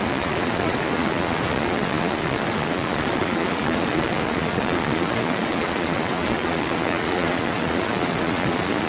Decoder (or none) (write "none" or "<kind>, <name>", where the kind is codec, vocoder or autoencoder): vocoder, Vocos